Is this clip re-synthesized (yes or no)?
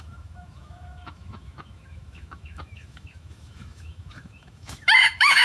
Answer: yes